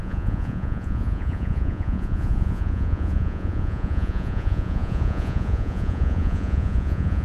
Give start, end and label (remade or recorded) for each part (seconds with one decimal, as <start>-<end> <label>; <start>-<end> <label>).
0.0-7.2 remade